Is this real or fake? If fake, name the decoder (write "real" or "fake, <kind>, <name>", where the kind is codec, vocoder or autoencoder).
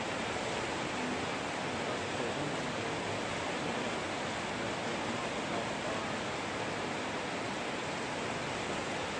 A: real